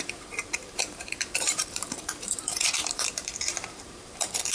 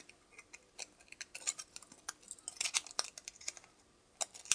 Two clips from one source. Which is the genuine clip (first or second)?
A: second